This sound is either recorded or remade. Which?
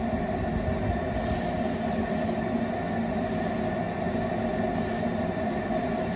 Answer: recorded